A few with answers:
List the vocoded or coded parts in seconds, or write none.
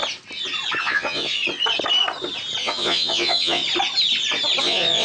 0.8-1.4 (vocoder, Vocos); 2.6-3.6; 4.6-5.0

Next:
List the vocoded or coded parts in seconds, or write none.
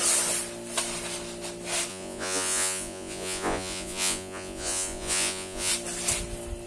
1.9-5.7 (vocoder, Vocos)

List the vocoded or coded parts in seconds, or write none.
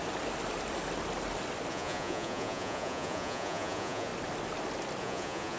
1.7-4.1 (vocoder, Vocos); 5.0-5.6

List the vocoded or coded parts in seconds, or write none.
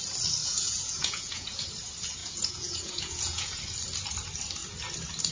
0.4-1.6 (vocoder, Vocos); 2.2-3.6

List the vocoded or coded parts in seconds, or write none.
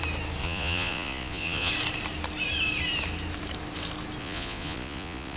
0.4-1.7 (vocoder, Vocos); 4.2-5.4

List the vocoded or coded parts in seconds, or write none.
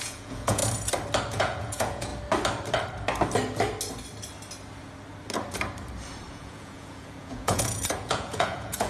0.0-0.6 (vocoder, Vocos); 1.3-2.1; 6.3-8.9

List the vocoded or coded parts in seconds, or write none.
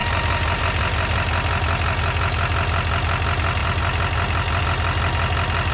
none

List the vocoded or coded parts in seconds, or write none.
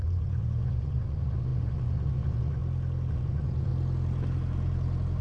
0.0-2.6 (vocoder, Vocos); 3.1-3.7